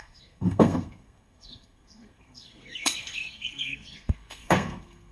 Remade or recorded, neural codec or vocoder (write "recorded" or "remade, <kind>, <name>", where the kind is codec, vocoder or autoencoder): remade, codec, SNAC